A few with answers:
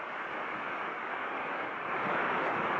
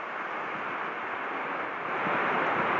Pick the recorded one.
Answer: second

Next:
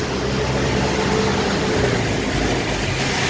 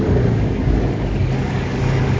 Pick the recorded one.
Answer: first